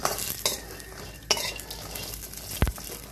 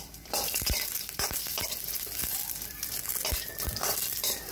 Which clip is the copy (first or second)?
second